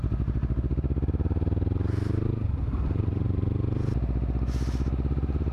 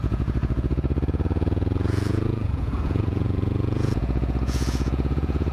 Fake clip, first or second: second